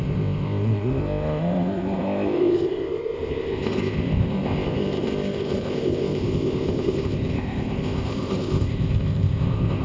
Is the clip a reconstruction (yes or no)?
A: yes